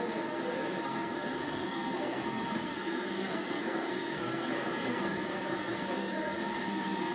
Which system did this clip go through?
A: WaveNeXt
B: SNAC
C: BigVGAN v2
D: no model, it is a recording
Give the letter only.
B